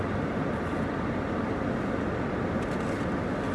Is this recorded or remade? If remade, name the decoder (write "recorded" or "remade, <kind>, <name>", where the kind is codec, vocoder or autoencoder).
recorded